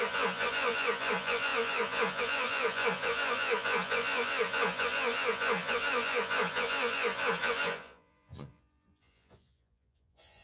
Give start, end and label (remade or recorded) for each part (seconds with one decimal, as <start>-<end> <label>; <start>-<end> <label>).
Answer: 0.0-10.4 remade